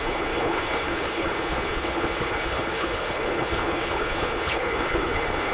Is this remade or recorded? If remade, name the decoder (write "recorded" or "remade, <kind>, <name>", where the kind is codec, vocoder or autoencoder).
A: remade, codec, HILCodec